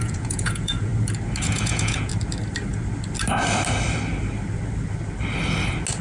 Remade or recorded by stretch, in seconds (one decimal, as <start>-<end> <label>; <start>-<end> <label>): 0.0-0.9 remade; 0.9-1.4 recorded; 1.4-2.1 remade; 2.1-6.0 recorded